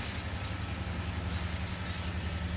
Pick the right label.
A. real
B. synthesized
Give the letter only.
A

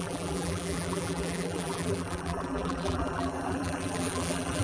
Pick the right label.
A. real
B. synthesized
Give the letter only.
B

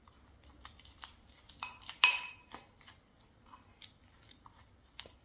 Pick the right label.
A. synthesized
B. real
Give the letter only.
A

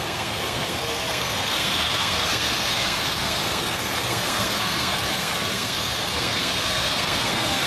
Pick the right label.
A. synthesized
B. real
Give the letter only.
A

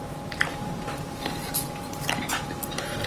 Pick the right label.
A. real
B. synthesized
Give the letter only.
B